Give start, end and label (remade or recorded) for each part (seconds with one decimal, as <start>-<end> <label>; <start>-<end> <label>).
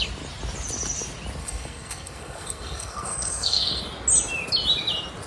0.0-1.4 recorded; 1.4-3.8 remade; 3.8-5.3 recorded